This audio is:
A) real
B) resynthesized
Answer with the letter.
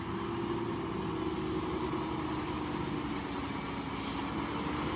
A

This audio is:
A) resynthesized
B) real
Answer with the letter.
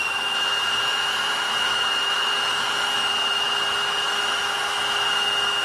A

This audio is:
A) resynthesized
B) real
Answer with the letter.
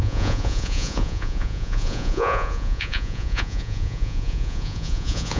A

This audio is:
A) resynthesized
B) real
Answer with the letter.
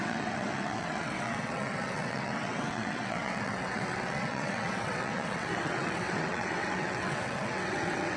A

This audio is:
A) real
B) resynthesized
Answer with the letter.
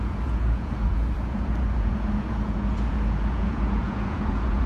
B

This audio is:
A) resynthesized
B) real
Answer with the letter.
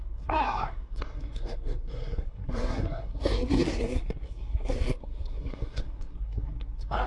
A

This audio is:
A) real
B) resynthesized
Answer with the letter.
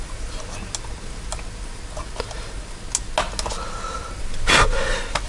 A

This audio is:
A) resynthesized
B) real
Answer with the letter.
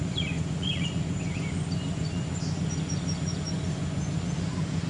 A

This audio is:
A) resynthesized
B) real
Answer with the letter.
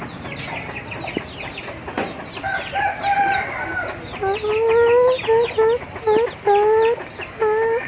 B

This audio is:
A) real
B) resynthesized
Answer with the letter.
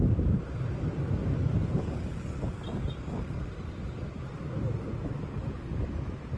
A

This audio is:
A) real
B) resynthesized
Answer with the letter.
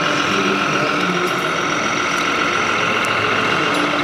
A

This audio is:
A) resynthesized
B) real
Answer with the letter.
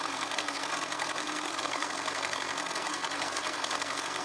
A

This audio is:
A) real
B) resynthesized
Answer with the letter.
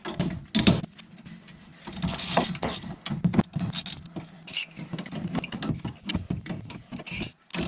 A